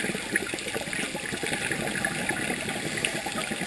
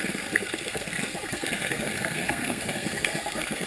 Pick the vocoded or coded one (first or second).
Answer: second